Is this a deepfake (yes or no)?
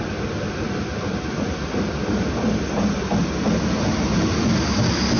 no